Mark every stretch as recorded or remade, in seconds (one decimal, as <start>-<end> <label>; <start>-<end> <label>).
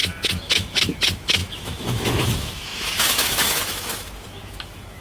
0.0-5.0 remade